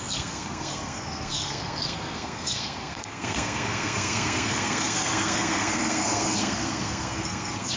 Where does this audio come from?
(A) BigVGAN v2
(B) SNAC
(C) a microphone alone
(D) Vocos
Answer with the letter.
B